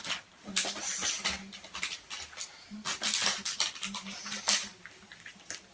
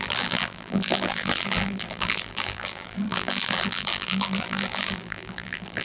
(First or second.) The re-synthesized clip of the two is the second